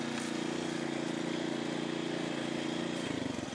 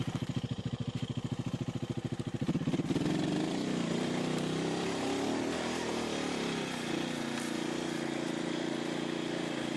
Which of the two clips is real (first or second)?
first